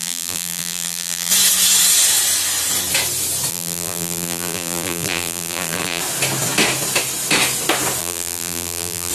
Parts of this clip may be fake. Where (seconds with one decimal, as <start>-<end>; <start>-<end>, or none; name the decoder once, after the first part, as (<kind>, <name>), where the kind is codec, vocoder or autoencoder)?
0.0-1.3 (vocoder, BigVGAN v2); 3.5-6.0; 8.0-9.1